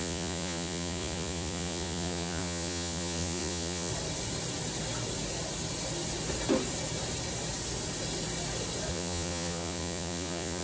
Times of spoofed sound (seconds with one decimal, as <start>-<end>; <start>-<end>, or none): 0.0-3.9; 8.9-10.6